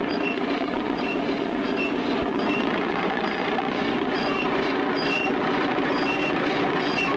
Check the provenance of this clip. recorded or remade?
remade